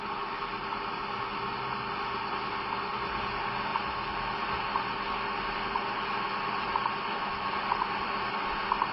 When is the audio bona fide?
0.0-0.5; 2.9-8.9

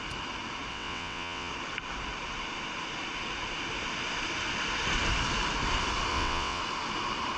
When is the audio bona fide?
0.0-0.7; 1.5-6.1; 6.6-7.4

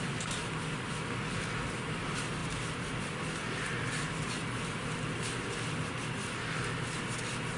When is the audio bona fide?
0.0-7.6

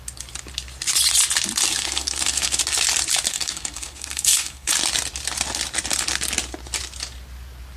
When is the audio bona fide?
0.0-1.7; 2.6-3.3; 4.7-7.8

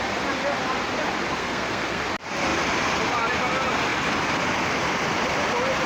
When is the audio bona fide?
0.0-1.4; 2.0-5.9

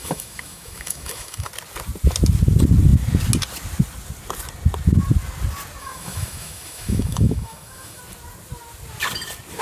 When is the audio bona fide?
1.5-5.8; 8.0-9.6

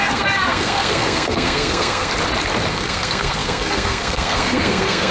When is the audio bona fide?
2.1-2.7

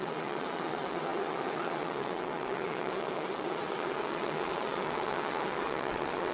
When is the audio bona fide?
none